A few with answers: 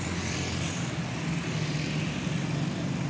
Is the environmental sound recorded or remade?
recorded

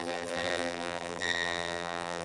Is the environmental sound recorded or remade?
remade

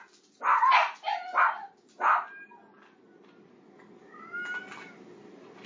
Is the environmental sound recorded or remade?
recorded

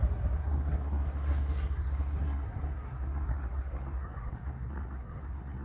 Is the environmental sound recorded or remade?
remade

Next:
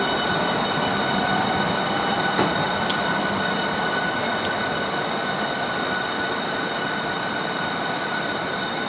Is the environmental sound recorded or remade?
remade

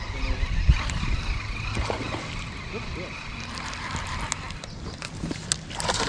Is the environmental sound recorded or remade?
recorded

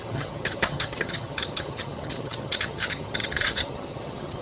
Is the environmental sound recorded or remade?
remade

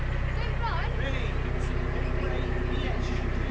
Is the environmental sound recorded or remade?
recorded